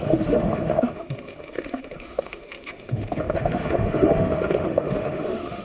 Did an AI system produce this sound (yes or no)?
yes